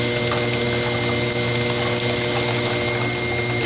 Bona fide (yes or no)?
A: yes